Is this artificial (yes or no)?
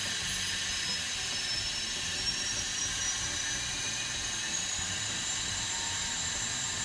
no